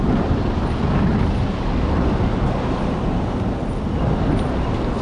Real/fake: real